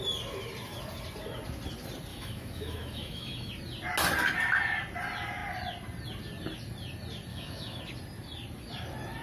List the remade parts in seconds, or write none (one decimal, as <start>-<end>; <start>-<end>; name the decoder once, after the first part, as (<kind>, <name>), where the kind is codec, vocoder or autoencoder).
2.1-3.5 (autoencoder, DAC-VAE); 7.3-7.8